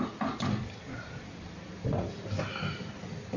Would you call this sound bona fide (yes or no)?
no